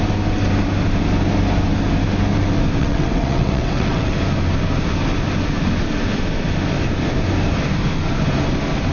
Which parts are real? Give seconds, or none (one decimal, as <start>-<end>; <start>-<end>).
0.0-2.8; 4.2-8.9